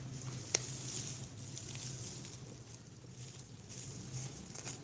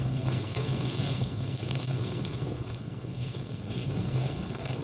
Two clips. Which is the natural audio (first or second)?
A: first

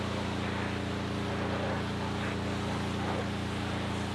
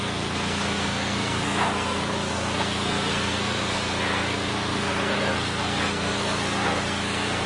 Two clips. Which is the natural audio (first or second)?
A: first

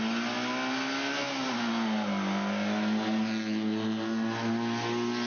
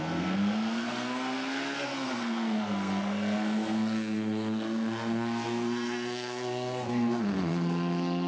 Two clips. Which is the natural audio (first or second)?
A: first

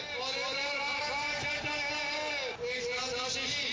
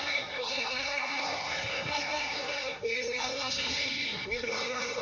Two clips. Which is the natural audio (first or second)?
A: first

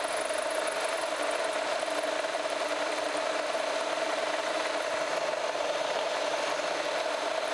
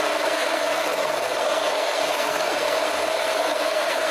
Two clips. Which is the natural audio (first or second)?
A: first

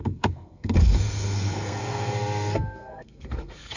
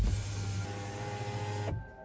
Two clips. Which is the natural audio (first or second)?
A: second